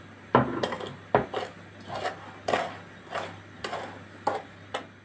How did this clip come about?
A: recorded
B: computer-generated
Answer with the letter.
A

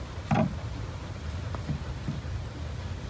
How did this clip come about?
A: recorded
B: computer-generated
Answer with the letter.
A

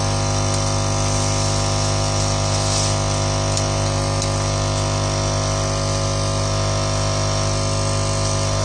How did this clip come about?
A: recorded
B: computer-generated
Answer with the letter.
A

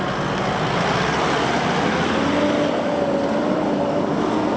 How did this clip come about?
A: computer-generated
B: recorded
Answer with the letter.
B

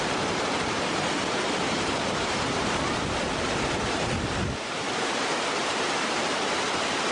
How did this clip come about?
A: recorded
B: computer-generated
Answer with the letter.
B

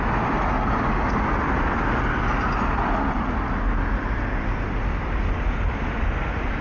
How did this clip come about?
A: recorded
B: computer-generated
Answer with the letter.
A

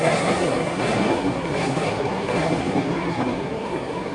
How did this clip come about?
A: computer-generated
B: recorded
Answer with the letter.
A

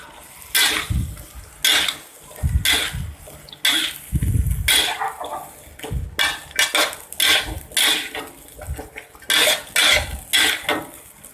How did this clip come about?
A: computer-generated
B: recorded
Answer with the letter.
B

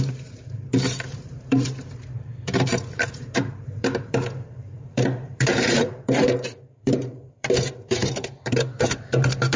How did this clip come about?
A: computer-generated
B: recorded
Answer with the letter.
A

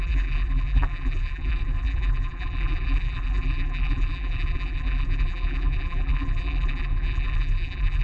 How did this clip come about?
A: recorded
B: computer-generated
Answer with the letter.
B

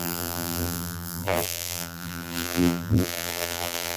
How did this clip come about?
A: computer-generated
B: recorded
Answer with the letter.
A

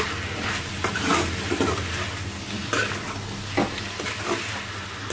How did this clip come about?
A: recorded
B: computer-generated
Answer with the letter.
A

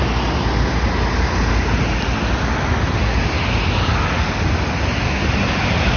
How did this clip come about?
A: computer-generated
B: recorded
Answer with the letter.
B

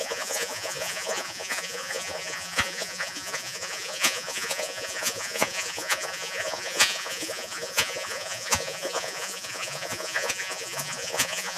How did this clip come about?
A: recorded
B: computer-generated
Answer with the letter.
B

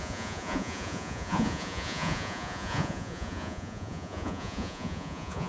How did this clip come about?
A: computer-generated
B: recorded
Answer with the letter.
A